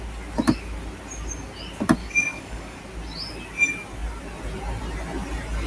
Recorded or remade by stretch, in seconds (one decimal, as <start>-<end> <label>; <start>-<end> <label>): 0.0-2.0 recorded; 2.0-2.8 remade; 2.8-5.7 recorded